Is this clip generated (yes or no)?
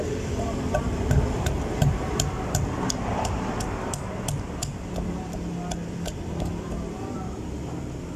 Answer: no